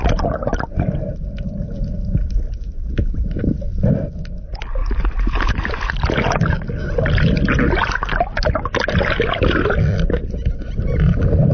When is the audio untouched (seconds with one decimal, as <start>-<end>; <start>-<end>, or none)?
0.0-11.5